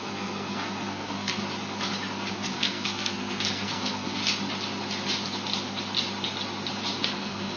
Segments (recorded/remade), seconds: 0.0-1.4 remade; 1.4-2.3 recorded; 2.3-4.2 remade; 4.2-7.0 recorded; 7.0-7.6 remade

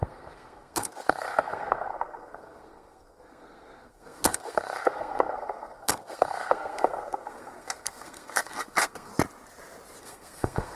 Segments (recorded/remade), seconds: 0.0-9.1 remade; 9.1-10.0 recorded; 10.0-10.8 remade

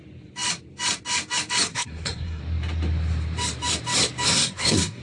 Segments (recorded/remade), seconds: 0.0-1.7 recorded; 1.7-2.4 remade; 2.4-4.3 recorded; 4.3-5.0 remade

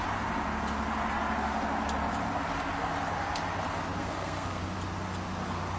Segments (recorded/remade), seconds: 0.0-4.0 recorded; 4.0-4.6 remade; 4.6-5.8 recorded

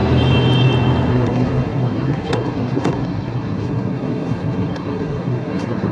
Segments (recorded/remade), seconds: 0.0-1.1 recorded; 1.1-5.9 remade